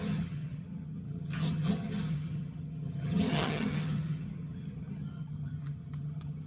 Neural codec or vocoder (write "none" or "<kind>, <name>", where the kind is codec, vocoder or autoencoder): vocoder, HiFi-GAN